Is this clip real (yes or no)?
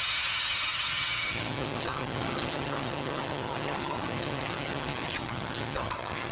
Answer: no